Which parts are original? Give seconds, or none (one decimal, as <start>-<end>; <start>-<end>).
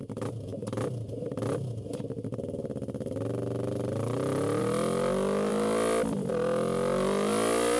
0.0-7.8